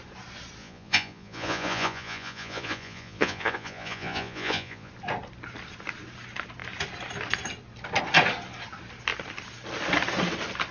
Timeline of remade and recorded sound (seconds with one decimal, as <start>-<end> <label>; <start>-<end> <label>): 0.0-0.6 recorded; 0.6-4.9 remade; 4.9-10.7 recorded